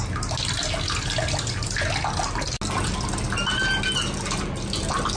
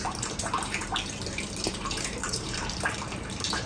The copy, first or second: second